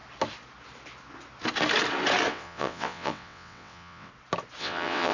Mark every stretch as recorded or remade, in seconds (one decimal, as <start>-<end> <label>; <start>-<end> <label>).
0.0-2.3 recorded; 2.3-4.1 remade; 4.1-4.6 recorded; 4.6-5.1 remade